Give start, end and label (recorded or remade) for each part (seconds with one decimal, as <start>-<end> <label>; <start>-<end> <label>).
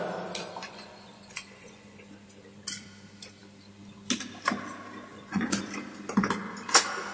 0.0-0.6 recorded; 0.6-2.1 remade; 2.1-5.1 recorded; 5.1-5.6 remade; 5.6-7.1 recorded